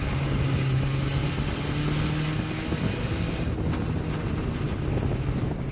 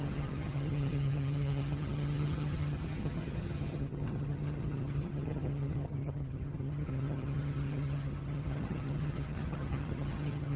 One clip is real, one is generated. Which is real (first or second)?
first